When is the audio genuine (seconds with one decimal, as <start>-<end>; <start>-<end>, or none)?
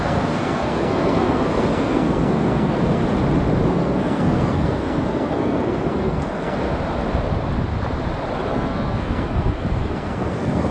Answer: 3.0-3.7; 6.7-8.5